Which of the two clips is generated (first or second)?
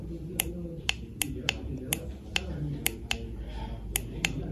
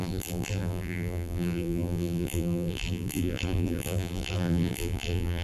second